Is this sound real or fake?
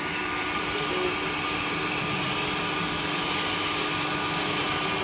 real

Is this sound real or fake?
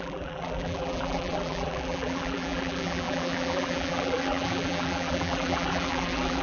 fake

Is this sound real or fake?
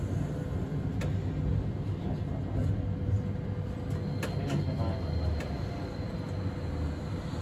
real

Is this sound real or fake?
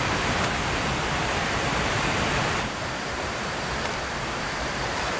fake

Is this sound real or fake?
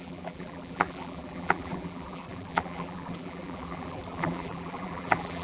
fake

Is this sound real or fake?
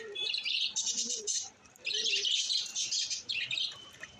fake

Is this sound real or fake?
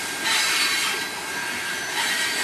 real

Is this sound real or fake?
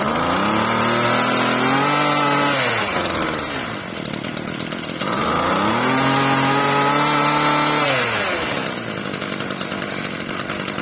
real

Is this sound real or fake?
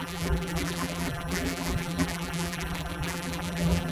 fake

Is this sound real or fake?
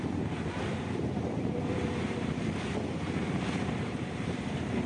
fake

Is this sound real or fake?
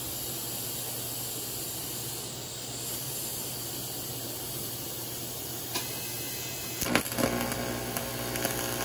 real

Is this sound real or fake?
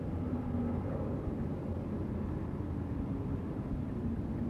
real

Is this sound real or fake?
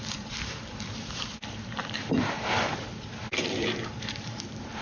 fake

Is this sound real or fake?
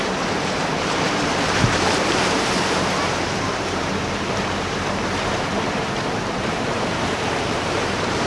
fake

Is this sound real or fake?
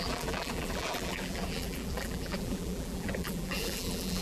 fake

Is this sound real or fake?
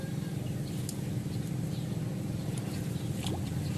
fake